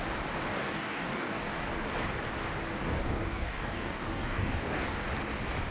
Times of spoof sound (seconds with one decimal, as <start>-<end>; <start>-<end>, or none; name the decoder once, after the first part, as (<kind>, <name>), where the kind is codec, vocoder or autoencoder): 0.5-1.7 (codec, DAC); 2.8-5.1